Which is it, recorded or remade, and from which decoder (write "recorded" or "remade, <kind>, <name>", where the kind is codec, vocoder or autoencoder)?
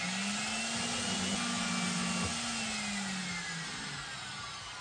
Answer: recorded